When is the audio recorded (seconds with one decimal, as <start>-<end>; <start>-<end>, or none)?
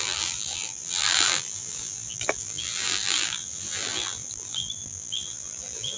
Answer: none